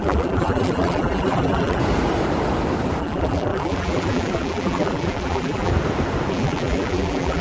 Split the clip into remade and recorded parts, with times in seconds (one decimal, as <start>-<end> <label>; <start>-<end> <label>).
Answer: 0.0-1.8 remade; 1.8-3.0 recorded; 3.0-5.7 remade; 5.7-6.3 recorded; 6.3-7.4 remade